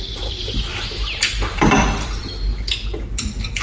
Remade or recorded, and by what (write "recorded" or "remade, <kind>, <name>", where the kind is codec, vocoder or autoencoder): remade, vocoder, BigVGAN v2